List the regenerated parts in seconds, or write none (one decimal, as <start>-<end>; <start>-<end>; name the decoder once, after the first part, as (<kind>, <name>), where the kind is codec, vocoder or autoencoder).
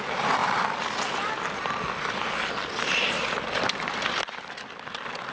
none